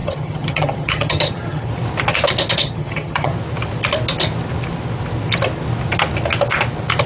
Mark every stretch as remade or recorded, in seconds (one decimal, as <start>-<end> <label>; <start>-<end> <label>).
0.0-1.7 remade; 1.7-2.6 recorded; 2.6-3.3 remade; 3.3-7.1 recorded